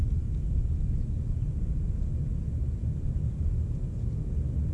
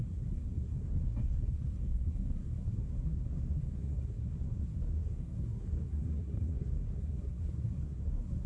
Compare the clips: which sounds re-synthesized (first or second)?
second